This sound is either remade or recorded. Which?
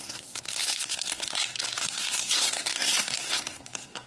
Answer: remade